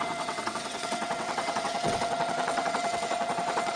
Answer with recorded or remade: remade